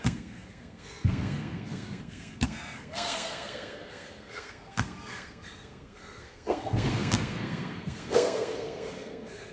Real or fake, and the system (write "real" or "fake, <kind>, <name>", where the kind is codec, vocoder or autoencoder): fake, codec, SNAC